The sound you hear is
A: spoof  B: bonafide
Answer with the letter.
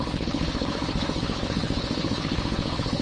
A